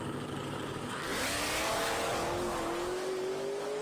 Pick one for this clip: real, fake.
fake